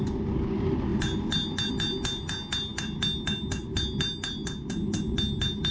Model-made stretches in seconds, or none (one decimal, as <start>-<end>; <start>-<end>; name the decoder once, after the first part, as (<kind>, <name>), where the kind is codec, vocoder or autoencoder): none